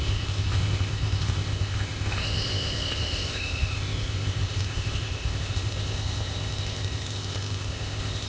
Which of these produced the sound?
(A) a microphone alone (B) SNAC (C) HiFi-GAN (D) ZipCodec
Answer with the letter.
D